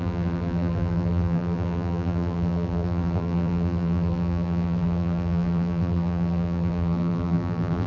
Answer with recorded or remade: remade